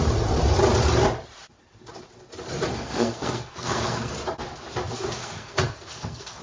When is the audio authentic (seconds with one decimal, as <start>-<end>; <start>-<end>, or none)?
0.0-2.7; 4.1-5.2